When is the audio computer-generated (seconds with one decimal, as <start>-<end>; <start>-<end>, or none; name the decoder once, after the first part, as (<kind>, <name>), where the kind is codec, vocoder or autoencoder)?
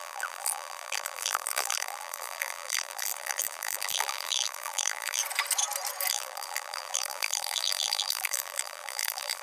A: 0.0-5.2 (vocoder, BigVGAN v2); 6.1-9.4